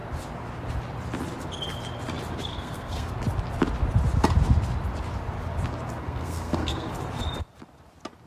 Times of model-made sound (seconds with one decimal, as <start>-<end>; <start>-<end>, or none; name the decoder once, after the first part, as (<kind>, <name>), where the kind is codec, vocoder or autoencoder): 2.5-3.1 (codec, SNAC); 6.0-6.9